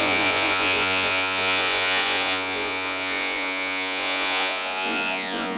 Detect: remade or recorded remade